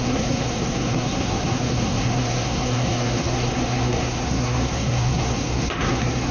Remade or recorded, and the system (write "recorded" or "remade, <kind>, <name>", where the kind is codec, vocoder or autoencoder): remade, codec, SNAC